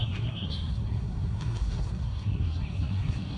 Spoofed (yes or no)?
yes